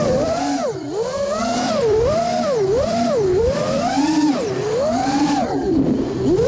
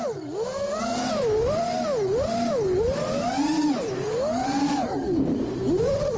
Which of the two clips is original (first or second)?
second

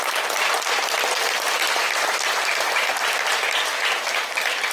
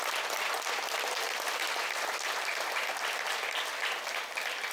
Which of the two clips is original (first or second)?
second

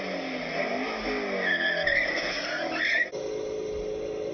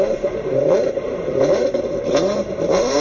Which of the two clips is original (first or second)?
first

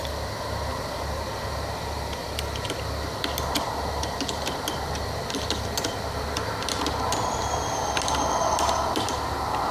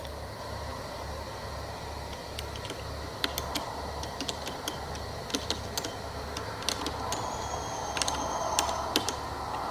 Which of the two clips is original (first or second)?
second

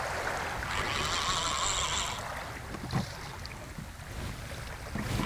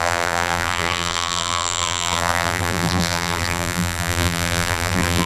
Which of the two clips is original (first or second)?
first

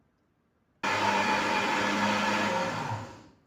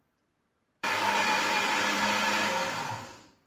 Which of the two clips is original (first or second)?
first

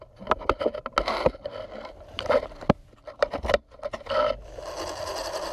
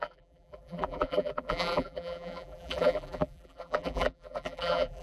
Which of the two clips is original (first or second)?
first